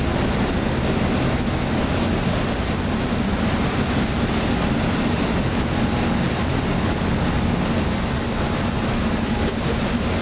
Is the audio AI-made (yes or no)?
no